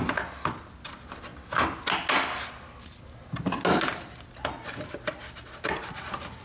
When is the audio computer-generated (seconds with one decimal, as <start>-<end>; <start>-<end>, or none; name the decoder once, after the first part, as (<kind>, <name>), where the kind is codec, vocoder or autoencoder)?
none